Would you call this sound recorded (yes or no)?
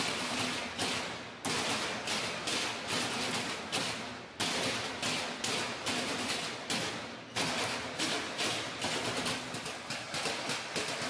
yes